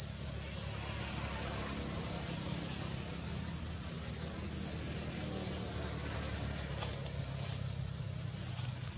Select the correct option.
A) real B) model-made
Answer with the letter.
A